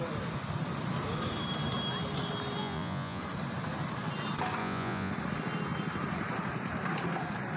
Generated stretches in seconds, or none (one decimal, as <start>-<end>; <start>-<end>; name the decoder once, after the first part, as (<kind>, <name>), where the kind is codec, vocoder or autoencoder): 2.6-3.2 (vocoder, Vocos); 4.6-5.1